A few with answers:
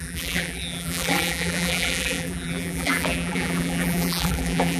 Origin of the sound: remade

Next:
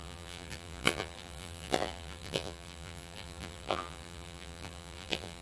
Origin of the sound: remade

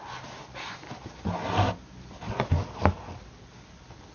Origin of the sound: recorded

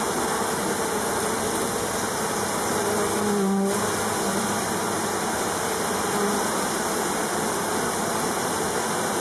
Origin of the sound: recorded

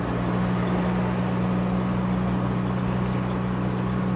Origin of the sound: recorded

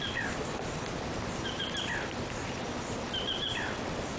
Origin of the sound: recorded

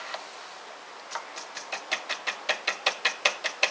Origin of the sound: recorded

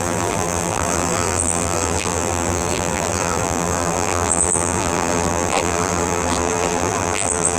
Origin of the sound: remade